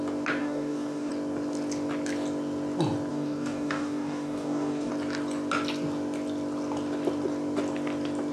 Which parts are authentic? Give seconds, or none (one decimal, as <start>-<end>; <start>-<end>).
0.0-0.4; 1.1-3.1; 4.9-8.3